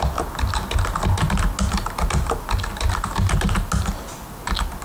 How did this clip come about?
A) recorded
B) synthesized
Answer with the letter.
A